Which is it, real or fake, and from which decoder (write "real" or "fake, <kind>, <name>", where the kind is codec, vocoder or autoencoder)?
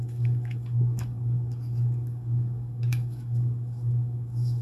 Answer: fake, codec, DAC